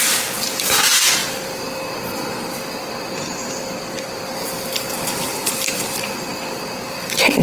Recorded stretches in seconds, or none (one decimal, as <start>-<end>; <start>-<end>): 0.0-7.4